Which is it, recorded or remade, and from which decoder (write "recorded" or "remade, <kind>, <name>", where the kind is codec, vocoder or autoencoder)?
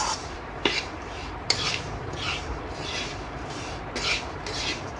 remade, vocoder, BigVGAN v2